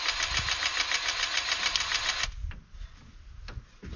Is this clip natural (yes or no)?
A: yes